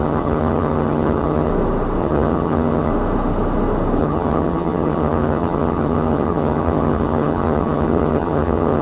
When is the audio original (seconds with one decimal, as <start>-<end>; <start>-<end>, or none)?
1.5-2.0; 2.9-4.0